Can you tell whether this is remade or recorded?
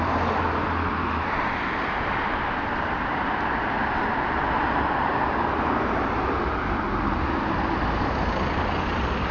recorded